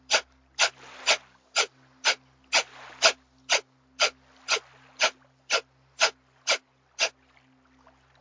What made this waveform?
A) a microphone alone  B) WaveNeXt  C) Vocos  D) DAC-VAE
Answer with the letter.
A